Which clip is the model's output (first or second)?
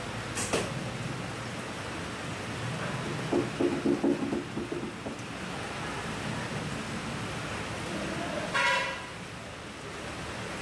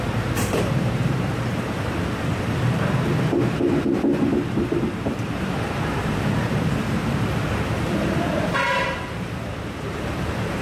second